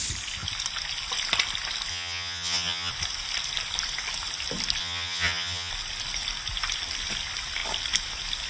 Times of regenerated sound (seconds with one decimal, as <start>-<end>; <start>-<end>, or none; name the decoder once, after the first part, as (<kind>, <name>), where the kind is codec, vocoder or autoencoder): 1.9-2.9 (vocoder, HiFi-GAN); 4.8-5.7